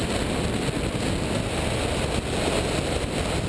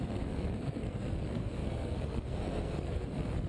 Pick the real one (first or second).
first